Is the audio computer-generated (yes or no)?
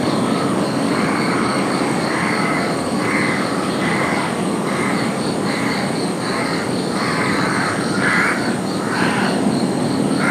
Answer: yes